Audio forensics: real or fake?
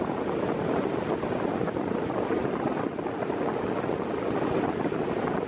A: real